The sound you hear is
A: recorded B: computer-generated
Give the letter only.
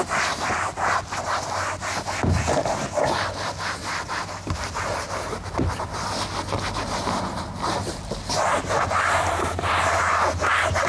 A